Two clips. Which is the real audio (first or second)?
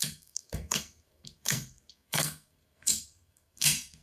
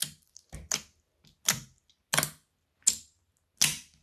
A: second